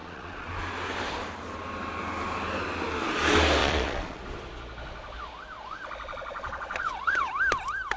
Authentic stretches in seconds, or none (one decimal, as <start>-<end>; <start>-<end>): 0.5-3.6; 4.2-6.3; 7.3-8.0